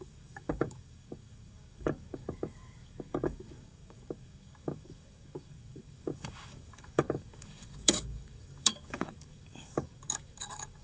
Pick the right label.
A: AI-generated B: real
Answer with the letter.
A